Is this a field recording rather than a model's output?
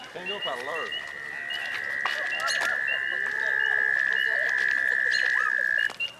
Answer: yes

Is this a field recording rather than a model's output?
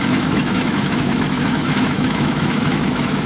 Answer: no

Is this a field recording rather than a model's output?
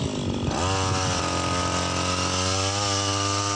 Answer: yes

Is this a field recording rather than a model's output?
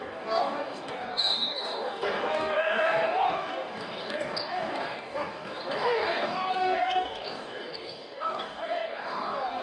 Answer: no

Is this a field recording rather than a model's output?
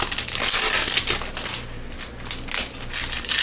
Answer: yes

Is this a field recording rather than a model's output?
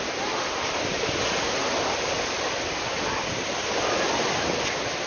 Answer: yes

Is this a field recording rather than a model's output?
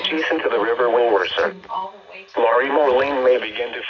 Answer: yes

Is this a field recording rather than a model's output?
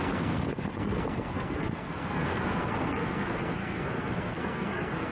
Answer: no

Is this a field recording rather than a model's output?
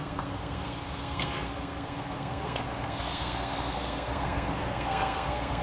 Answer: no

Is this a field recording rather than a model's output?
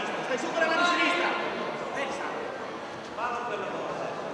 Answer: yes